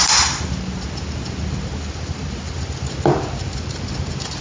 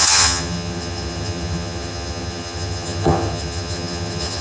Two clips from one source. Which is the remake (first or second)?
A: second